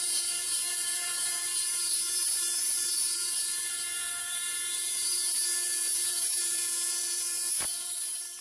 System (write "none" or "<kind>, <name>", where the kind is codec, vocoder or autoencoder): vocoder, Vocos